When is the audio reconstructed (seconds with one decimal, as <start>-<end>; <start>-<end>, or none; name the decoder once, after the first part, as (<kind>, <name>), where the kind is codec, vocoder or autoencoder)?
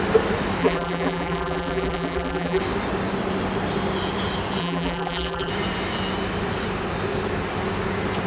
0.6-2.6 (vocoder, BigVGAN v2); 4.6-5.5